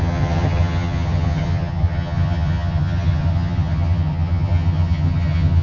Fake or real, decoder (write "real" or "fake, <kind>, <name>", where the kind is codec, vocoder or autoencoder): fake, vocoder, HiFi-GAN